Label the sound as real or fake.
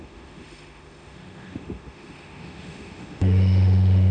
fake